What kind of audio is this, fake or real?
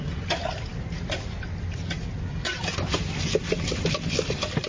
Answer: real